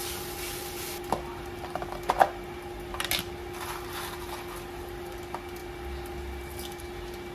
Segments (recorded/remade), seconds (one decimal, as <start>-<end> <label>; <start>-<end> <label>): 0.0-7.3 recorded